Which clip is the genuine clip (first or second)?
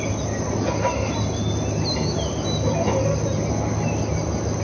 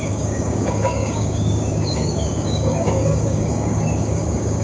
first